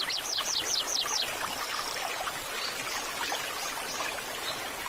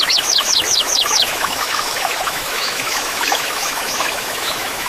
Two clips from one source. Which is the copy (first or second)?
second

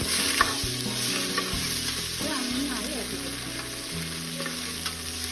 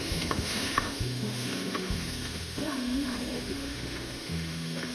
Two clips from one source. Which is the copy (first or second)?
second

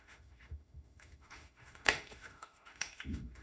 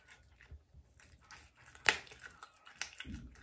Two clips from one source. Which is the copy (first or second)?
first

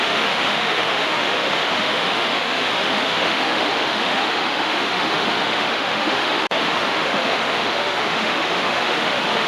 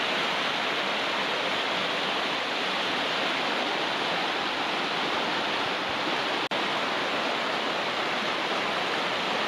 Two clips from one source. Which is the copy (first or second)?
first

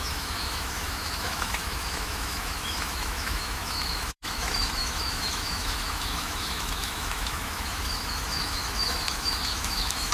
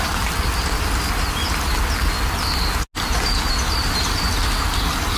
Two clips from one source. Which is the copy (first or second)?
first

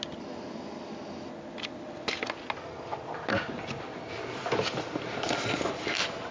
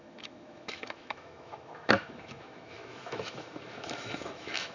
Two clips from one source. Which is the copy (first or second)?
second